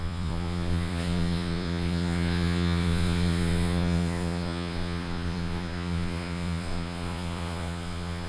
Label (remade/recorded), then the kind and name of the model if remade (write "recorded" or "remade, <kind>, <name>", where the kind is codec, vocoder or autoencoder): remade, vocoder, Vocos